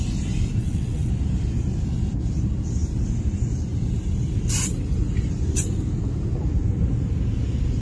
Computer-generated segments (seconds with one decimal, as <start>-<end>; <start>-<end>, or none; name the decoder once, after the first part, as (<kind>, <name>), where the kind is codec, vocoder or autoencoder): 0.6-1.1 (vocoder, WaveNeXt)